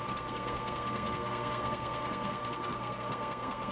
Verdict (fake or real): fake